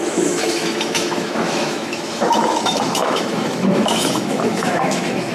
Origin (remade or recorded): remade